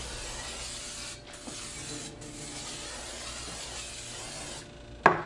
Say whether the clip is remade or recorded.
recorded